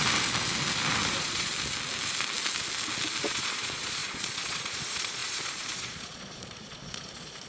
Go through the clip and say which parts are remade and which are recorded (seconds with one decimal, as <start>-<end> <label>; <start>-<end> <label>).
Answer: 0.0-1.1 recorded; 1.1-1.5 remade; 1.5-3.2 recorded; 3.2-7.5 remade